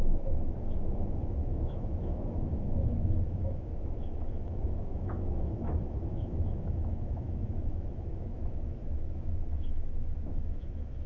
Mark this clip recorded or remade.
remade